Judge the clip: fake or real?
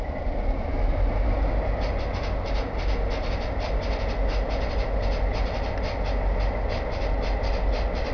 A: real